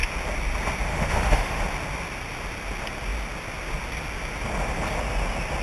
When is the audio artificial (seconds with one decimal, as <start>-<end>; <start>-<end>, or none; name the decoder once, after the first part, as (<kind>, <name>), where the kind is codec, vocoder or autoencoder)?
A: 0.9-1.6 (autoencoder, DAC-VAE)

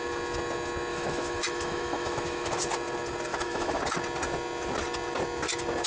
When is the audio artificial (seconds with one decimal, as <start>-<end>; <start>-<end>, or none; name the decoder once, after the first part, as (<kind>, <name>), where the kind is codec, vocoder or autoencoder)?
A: 0.9-2.6 (autoencoder, DAC-VAE); 3.3-3.8

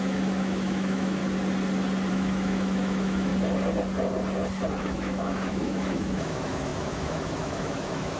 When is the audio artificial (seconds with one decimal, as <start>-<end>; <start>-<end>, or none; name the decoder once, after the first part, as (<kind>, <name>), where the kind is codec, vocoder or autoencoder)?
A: 0.0-1.2 (autoencoder, DAC-VAE); 2.1-3.3; 4.8-8.2

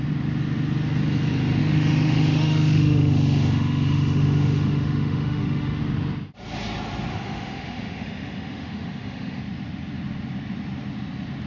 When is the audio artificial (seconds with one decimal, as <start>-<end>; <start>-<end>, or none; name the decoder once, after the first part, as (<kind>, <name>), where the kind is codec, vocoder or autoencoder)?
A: 1.6-5.8 (autoencoder, DAC-VAE); 7.1-9.4

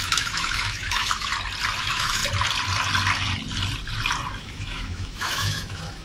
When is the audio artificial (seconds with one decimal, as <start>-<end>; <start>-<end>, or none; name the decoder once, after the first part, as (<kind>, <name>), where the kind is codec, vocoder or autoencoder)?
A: 0.0-1.3 (autoencoder, DAC-VAE); 1.8-2.2; 4.4-6.0

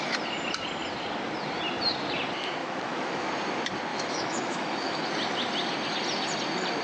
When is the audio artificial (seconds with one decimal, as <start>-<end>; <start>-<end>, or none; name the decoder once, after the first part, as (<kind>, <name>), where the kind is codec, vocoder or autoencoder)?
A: 2.6-3.3 (autoencoder, DAC-VAE); 3.9-5.0

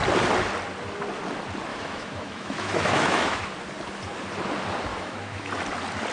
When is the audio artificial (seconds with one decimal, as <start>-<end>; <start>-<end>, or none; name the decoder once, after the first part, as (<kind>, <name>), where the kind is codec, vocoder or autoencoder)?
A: 1.7-3.4 (autoencoder, DAC-VAE); 4.9-5.5

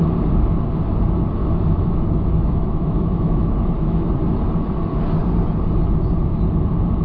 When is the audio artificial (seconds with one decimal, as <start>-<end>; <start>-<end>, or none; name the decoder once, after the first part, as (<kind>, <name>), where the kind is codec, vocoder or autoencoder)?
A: 1.4-4.1 (autoencoder, DAC-VAE)